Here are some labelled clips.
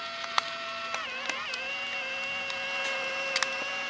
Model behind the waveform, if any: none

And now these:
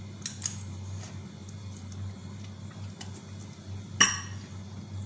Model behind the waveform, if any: none